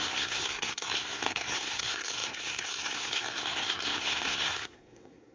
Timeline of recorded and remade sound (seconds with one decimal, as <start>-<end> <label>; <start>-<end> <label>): 0.0-5.3 remade